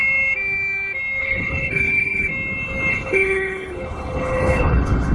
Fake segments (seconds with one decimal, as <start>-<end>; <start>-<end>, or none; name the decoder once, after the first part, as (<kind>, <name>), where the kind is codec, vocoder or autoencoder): 1.2-2.3 (codec, HILCodec); 2.9-5.1